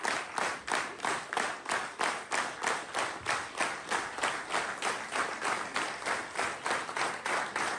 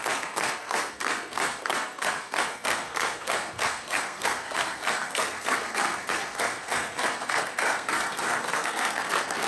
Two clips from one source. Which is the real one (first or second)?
first